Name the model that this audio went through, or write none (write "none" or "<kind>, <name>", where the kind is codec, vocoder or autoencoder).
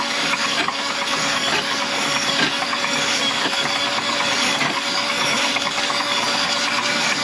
codec, DAC